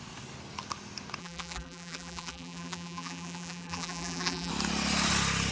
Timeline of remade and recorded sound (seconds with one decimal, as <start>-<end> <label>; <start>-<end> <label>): 0.0-1.2 recorded; 1.2-4.5 remade; 4.5-5.5 recorded